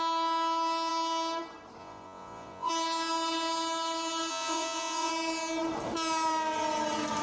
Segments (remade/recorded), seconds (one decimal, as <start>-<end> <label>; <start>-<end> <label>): 0.0-1.8 recorded; 1.8-2.7 remade; 2.7-4.3 recorded; 4.3-5.1 remade; 5.1-7.2 recorded